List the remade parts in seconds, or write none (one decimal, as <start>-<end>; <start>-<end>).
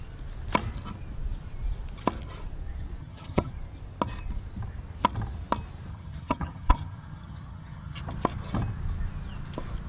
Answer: 3.0-3.5; 5.9-8.0